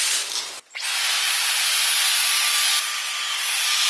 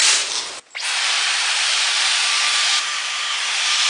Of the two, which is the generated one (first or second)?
second